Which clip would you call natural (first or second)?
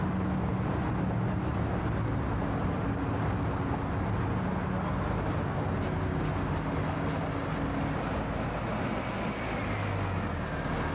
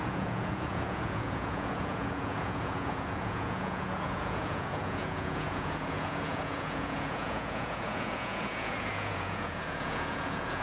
first